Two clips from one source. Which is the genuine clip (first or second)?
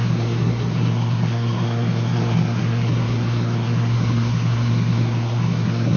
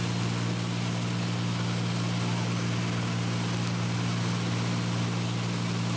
second